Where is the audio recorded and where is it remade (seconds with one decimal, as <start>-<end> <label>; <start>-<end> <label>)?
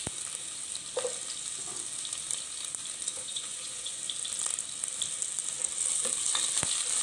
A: 0.0-3.1 recorded; 3.1-4.0 remade; 4.0-7.0 recorded